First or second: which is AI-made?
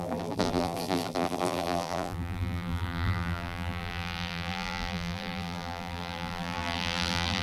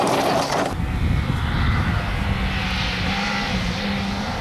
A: first